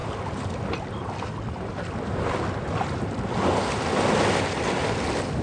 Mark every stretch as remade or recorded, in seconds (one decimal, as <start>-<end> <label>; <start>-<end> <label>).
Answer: 0.0-5.4 recorded